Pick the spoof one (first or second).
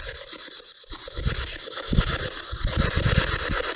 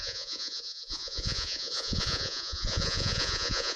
second